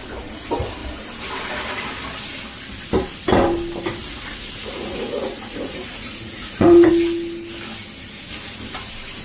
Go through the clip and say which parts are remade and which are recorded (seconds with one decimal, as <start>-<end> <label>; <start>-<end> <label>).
0.0-4.0 recorded; 4.0-6.9 remade; 6.9-9.2 recorded